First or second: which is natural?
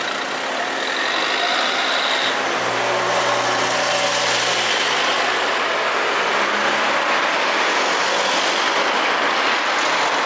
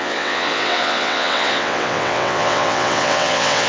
first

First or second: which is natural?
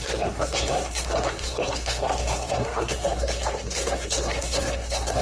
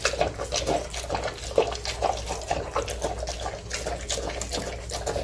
second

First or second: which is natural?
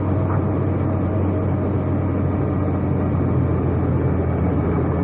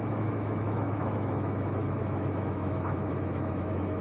first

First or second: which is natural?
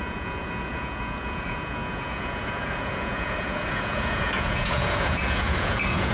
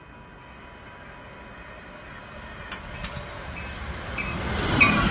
second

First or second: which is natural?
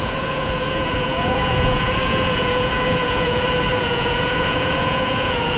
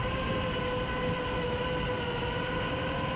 second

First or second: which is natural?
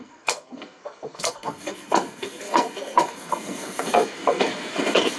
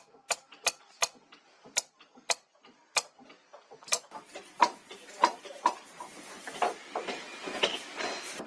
second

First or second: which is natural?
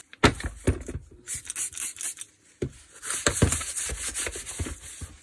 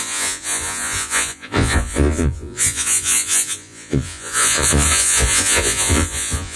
first